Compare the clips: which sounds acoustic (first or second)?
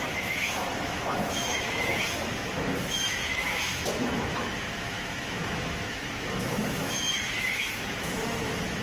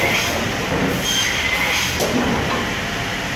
second